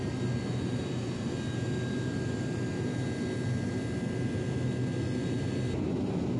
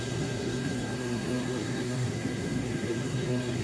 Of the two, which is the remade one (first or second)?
second